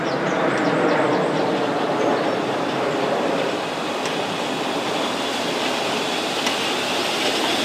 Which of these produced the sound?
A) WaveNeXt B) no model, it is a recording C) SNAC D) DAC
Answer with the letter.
B